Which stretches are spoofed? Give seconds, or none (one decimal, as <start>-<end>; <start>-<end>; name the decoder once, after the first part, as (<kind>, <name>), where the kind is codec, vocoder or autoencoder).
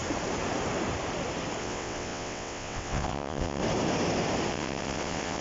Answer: 1.6-3.6 (vocoder, WaveNeXt); 4.5-5.4